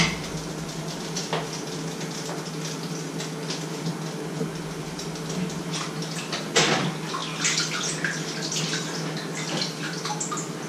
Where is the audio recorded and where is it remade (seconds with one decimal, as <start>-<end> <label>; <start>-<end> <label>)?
0.0-10.7 recorded